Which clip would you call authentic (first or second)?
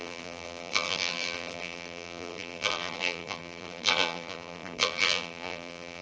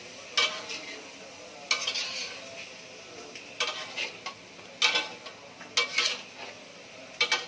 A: second